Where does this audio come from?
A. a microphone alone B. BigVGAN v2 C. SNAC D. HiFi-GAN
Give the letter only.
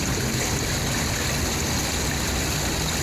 A